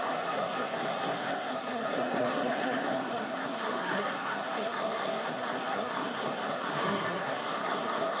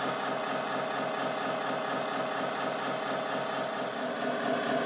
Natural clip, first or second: second